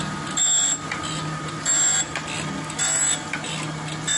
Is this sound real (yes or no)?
yes